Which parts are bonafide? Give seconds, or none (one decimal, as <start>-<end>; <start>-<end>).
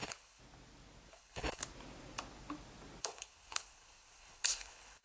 0.4-1.1; 1.6-3.0